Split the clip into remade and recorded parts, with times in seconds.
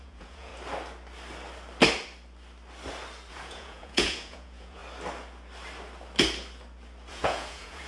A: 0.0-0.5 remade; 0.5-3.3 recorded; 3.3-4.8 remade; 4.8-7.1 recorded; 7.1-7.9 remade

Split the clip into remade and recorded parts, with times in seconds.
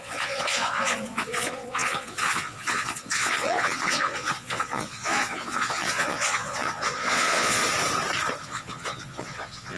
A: 0.0-7.6 remade; 7.6-8.4 recorded; 8.4-9.8 remade